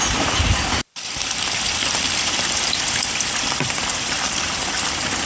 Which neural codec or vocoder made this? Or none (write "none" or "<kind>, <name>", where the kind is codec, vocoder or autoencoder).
vocoder, BigVGAN v2